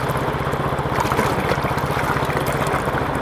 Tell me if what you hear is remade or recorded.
recorded